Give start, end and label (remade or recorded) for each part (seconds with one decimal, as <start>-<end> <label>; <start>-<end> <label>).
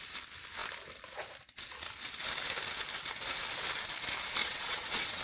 0.0-4.4 recorded; 4.4-5.2 remade